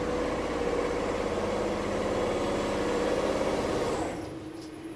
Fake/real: real